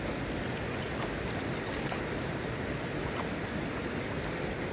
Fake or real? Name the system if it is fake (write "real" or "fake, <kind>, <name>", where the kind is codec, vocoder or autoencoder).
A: real